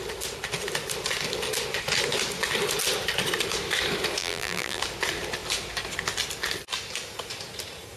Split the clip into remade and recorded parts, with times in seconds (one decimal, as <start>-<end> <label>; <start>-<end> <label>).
0.0-4.2 recorded; 4.2-4.8 remade; 4.8-8.0 recorded